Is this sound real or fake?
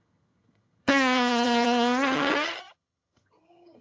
fake